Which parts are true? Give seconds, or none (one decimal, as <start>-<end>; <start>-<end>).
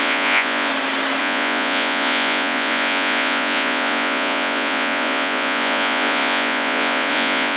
0.7-1.2